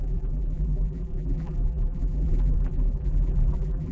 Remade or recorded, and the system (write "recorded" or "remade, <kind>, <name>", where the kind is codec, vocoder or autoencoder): remade, vocoder, BigVGAN v2